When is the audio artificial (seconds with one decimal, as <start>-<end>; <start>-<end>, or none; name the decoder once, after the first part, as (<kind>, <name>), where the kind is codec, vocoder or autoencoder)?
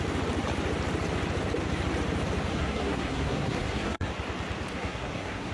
2.5-4.1 (codec, SNAC); 4.7-5.5